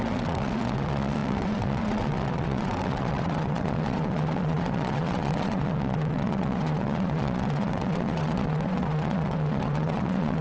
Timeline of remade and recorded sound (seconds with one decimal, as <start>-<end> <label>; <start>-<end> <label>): 0.0-10.4 remade